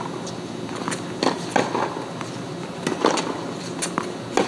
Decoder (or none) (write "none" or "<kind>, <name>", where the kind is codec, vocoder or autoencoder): none